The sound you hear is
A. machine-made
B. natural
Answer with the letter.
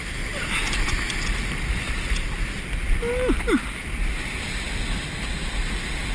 B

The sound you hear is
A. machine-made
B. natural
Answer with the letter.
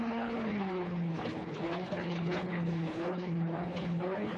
A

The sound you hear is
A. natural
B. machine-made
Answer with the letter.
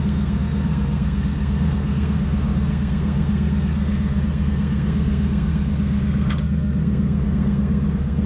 B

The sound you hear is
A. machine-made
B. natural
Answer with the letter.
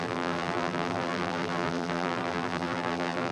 A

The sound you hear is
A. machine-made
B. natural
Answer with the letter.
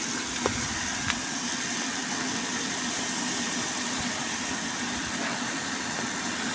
B